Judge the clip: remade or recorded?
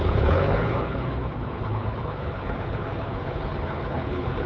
remade